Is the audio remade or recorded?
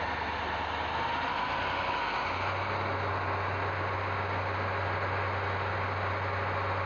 recorded